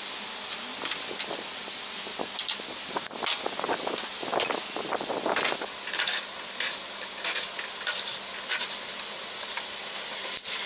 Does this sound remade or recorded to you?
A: recorded